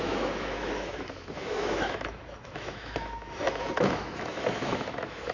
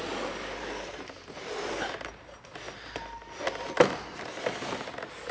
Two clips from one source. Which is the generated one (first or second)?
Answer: first